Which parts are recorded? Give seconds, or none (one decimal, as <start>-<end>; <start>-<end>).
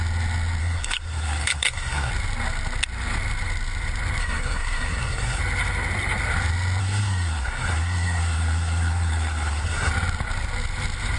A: 0.0-0.6; 2.1-4.2; 5.4-6.8; 9.9-11.2